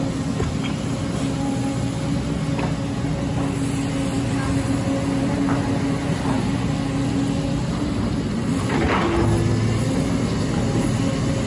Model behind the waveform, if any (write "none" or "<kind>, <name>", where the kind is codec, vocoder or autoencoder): none